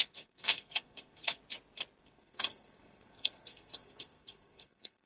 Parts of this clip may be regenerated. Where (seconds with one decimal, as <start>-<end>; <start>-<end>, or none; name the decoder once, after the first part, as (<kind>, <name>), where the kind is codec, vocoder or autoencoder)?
0.0-1.4 (codec, SNAC); 2.0-5.1